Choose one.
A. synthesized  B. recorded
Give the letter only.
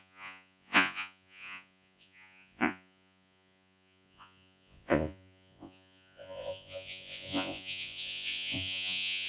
A